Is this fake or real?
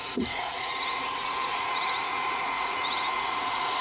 fake